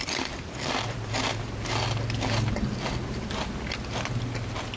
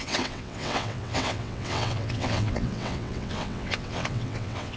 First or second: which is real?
first